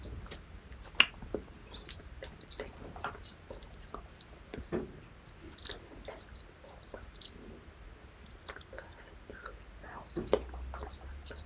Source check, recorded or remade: recorded